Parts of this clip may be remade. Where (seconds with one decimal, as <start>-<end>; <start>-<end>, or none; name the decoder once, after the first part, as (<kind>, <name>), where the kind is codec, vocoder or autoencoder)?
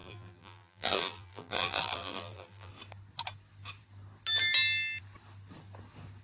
0.0-2.7 (vocoder, BigVGAN v2)